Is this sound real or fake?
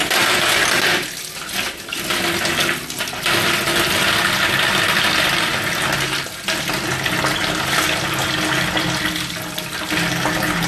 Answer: real